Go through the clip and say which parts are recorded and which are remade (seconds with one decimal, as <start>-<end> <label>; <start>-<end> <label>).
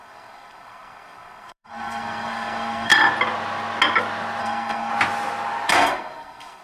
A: 0.0-2.9 remade; 2.9-4.4 recorded; 4.4-4.9 remade; 4.9-5.7 recorded; 5.7-6.6 remade